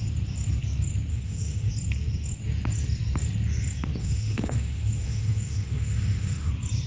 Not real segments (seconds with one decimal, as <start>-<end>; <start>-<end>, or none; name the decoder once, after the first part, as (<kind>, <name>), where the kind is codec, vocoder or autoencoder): 1.1-1.7 (autoencoder, DAC-VAE); 4.0-6.5